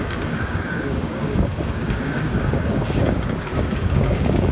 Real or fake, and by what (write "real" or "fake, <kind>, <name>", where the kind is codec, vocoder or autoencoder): fake, codec, DAC